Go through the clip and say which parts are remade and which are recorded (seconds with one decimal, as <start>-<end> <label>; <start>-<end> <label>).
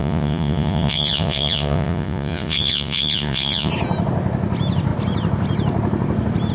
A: 0.0-3.7 remade; 3.7-6.5 recorded